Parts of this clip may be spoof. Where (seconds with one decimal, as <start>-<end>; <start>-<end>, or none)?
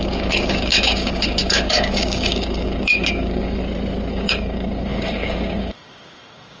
0.0-3.6; 4.1-6.6